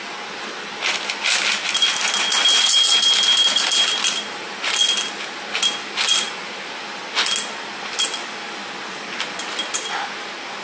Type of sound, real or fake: real